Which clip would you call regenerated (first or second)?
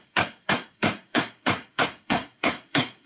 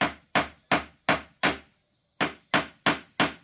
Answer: first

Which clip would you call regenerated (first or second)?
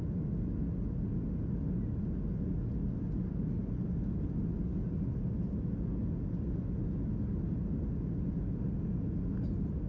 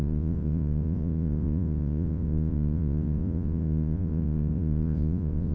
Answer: second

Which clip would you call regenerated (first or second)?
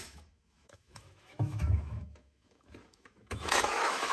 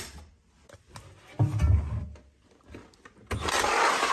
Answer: first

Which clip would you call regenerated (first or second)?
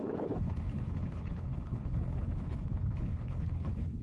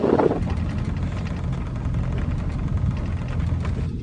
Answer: first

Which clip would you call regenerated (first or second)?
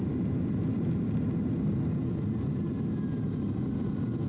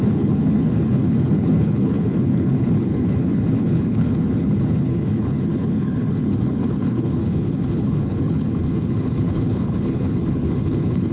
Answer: second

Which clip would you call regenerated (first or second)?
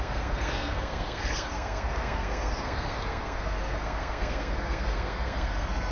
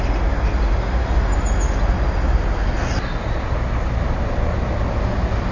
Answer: first